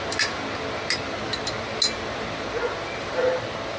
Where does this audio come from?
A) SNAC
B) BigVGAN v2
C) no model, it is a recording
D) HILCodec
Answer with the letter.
C